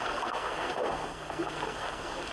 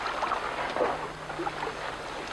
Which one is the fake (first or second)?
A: first